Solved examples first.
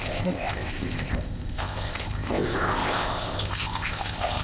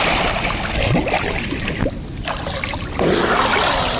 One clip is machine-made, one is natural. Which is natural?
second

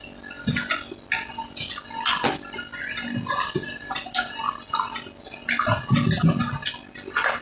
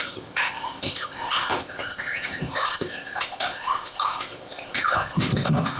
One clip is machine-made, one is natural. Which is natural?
first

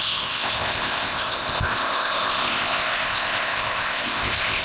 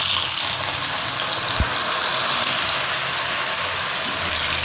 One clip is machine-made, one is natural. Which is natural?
second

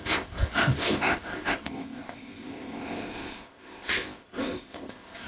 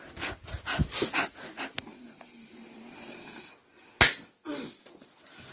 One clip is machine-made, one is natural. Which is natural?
second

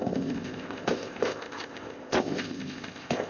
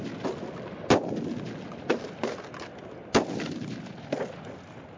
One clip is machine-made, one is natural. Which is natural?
second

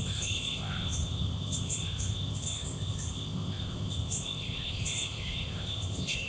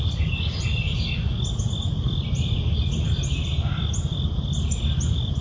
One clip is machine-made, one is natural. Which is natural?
second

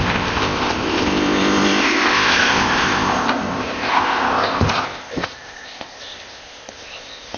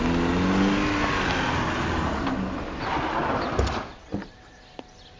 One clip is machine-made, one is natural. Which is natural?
second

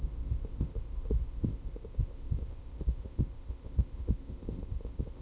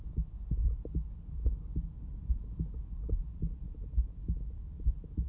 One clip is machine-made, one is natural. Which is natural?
second